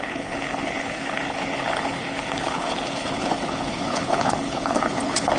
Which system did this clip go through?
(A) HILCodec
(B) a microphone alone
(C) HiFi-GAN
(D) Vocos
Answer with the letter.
A